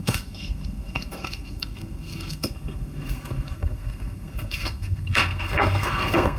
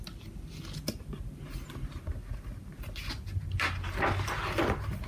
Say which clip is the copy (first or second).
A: first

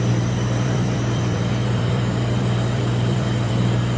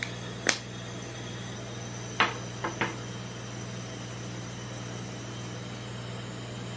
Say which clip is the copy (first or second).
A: first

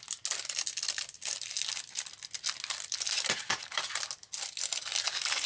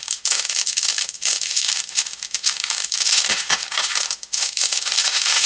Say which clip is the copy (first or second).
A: second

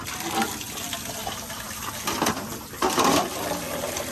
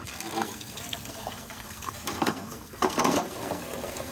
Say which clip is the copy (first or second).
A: second